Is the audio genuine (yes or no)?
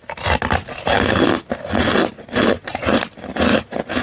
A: yes